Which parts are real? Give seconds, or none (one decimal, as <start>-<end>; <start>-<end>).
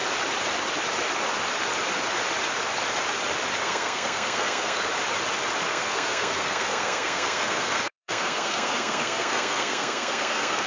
0.0-3.6; 4.9-5.7